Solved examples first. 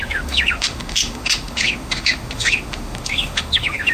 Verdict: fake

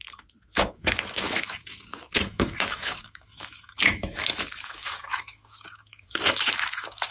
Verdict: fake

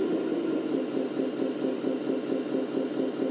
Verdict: real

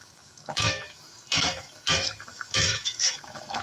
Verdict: fake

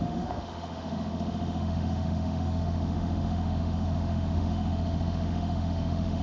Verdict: fake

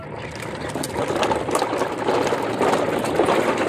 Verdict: real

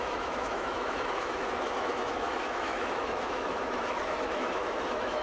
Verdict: fake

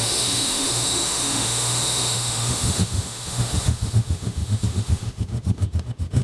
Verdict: fake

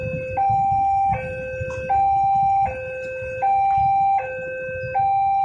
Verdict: real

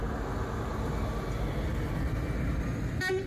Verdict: real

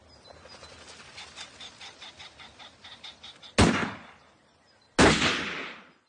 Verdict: real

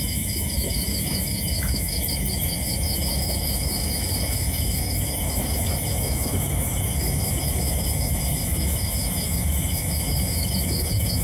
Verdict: fake